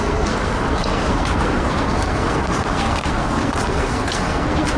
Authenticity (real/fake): fake